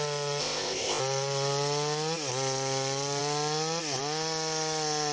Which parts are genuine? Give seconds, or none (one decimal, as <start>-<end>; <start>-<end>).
0.0-0.4; 1.0-5.1

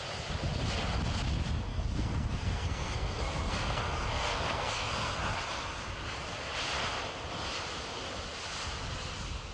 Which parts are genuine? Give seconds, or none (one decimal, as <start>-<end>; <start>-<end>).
0.0-1.7; 5.2-9.5